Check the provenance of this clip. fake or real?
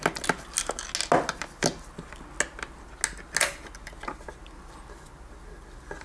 real